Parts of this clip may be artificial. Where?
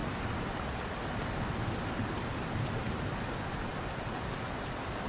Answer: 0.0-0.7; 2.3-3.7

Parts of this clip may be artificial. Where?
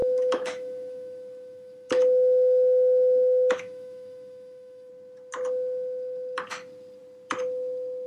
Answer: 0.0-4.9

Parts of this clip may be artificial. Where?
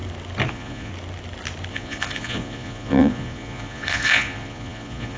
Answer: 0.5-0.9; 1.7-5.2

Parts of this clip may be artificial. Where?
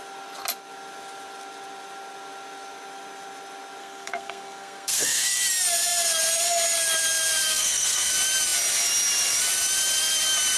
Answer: 3.8-5.4; 7.5-8.1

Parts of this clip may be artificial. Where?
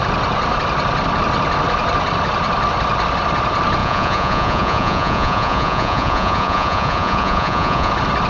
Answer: 3.8-7.9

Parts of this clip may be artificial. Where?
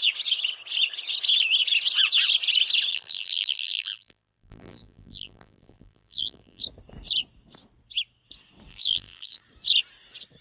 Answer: 2.9-6.6; 8.7-9.4